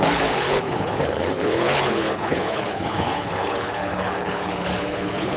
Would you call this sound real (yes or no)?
no